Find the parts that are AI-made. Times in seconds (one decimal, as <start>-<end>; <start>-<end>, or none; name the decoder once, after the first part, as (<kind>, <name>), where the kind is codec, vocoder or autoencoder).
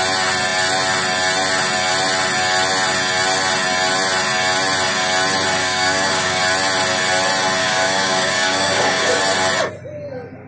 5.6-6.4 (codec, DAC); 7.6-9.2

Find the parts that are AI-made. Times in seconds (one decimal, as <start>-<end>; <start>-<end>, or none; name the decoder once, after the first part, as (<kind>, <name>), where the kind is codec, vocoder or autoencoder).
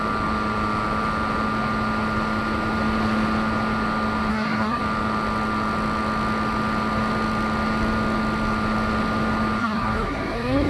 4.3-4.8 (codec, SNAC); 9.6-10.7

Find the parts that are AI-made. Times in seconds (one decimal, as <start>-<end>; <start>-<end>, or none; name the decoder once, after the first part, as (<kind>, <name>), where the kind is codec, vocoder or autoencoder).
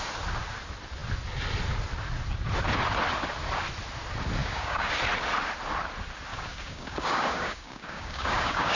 4.4-5.0 (codec, DAC); 6.3-8.8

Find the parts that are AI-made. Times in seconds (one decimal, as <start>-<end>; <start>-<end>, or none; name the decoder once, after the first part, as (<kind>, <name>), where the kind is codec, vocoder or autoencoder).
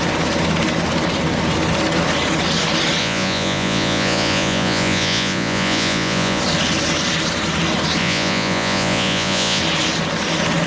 3.0-6.4 (vocoder, Vocos); 8.0-9.6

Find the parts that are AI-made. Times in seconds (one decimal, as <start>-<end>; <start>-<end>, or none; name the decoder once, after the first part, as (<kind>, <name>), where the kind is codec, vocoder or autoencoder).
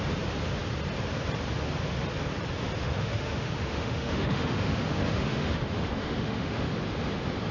2.8-6.7 (autoencoder, DAC-VAE)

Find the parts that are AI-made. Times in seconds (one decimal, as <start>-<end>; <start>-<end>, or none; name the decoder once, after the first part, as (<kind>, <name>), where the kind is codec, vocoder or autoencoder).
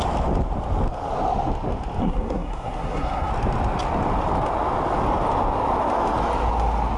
2.0-3.3 (codec, SNAC)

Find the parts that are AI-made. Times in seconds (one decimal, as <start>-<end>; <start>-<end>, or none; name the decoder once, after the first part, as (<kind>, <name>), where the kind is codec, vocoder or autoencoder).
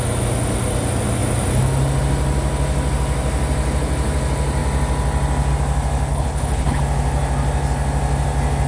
6.1-6.8 (codec, HILCodec)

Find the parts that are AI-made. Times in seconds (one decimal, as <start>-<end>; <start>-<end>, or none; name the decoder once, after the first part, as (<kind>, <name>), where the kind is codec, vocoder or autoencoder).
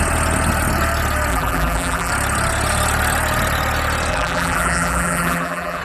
1.3-2.1 (vocoder, BigVGAN v2); 4.1-5.8